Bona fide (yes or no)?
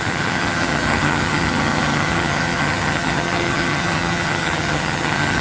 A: no